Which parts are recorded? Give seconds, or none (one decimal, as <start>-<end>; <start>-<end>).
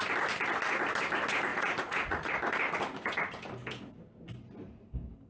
0.0-1.5; 2.3-5.3